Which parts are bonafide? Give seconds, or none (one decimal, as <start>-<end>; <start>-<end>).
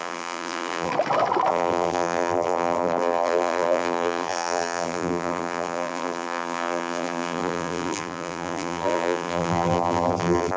0.9-1.5